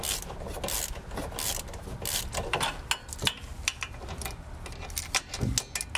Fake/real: real